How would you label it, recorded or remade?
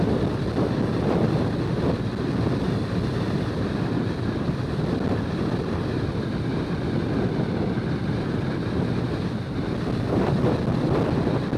recorded